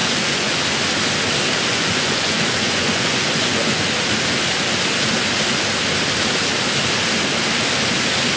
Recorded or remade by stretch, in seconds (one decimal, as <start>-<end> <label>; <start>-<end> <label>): 0.0-0.6 remade; 0.6-1.7 recorded; 1.7-3.8 remade; 3.8-8.4 recorded